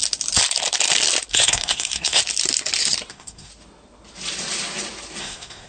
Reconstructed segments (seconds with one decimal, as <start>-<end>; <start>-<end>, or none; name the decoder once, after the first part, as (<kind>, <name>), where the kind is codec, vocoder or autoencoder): 1.3-2.2 (codec, SNAC); 3.1-3.5; 5.2-5.7